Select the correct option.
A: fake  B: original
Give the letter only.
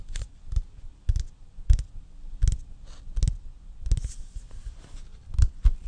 B